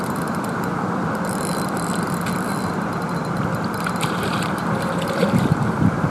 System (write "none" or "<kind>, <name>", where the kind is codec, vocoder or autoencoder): vocoder, BigVGAN v2